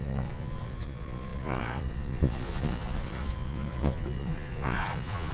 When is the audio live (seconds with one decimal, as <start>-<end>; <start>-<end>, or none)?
none